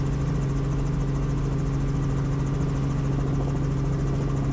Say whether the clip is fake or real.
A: real